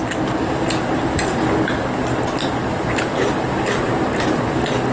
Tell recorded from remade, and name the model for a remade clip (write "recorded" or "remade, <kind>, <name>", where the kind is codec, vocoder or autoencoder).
recorded